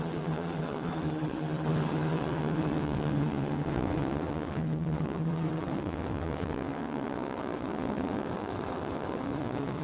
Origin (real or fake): fake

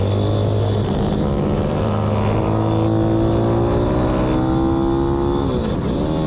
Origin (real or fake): real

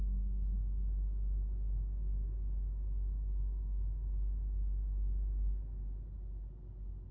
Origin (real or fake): real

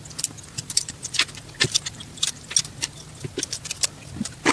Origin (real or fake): real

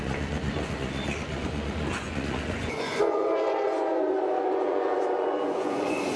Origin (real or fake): fake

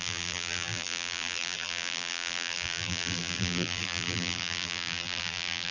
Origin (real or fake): fake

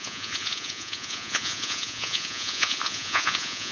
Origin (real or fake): fake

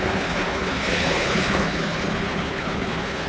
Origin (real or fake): fake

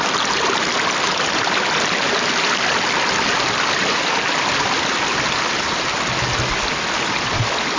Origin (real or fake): real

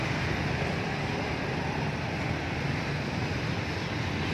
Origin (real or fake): real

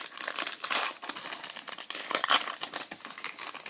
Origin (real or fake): real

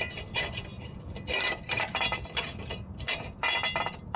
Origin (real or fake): real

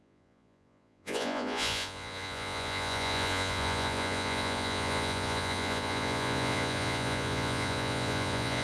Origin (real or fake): fake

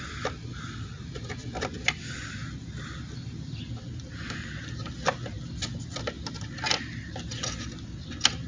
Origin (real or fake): real